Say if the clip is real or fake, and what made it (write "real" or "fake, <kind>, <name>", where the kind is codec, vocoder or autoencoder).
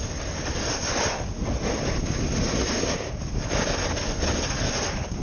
real